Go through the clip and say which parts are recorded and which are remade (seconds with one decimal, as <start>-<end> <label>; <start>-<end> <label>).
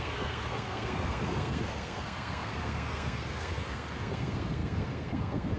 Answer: 0.0-5.6 remade